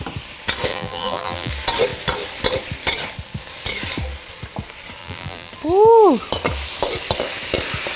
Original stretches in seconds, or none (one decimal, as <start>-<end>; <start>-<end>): 0.0-0.7; 1.5-5.0; 5.5-8.0